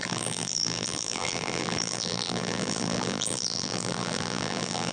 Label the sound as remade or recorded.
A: remade